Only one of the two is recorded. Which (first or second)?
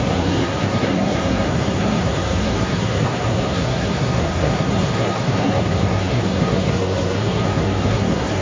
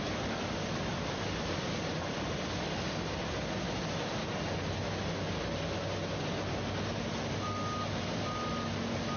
second